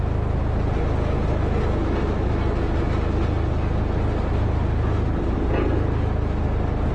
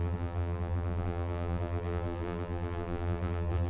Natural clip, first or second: first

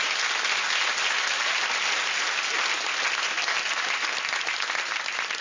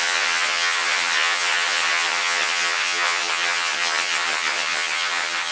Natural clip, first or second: first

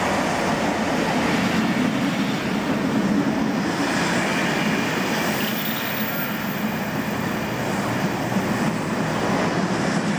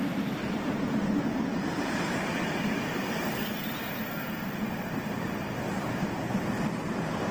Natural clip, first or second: first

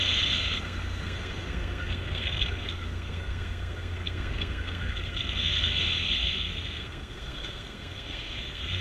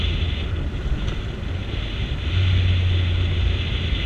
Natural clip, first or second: second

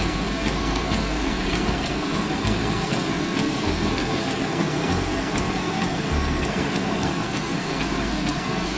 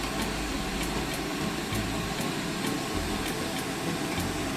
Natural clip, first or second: second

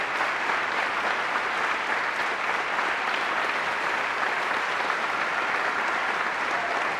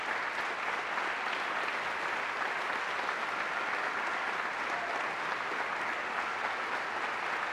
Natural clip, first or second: second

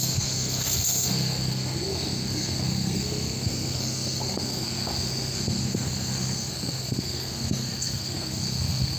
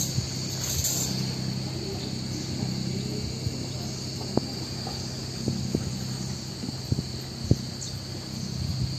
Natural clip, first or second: second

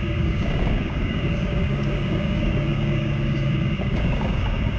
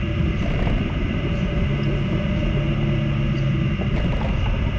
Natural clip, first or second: second